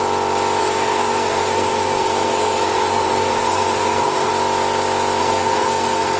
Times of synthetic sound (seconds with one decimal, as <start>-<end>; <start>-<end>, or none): 0.6-4.3; 5.2-6.2